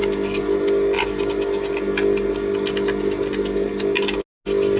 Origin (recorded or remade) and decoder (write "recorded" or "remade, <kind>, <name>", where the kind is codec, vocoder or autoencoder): recorded